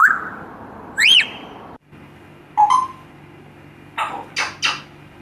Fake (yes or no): no